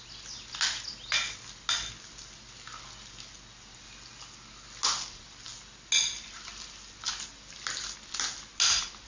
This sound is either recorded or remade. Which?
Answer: recorded